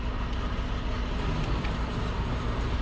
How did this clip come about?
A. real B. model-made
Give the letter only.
A